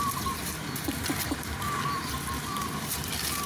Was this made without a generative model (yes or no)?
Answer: yes